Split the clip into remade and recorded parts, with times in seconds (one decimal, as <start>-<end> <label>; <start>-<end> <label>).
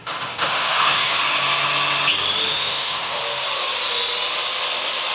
0.0-1.2 remade; 1.2-2.5 recorded; 2.5-3.2 remade; 3.2-5.1 recorded